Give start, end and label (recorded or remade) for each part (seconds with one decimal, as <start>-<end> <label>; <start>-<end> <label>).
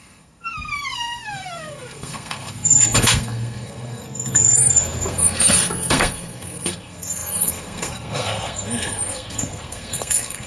0.0-10.5 remade